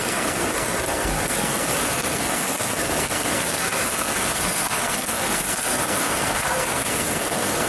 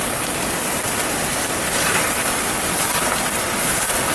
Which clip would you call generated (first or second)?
first